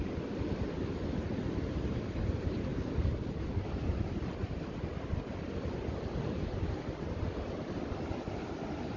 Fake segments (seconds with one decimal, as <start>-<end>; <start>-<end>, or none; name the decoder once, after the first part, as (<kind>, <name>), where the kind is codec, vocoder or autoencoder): none